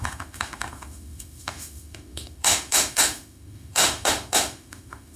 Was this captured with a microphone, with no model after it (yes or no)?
no